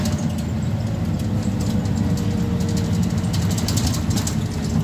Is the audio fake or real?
real